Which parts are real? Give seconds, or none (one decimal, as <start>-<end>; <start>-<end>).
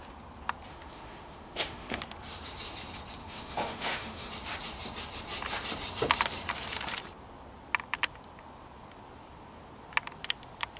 0.0-0.7; 2.0-3.2; 4.3-10.8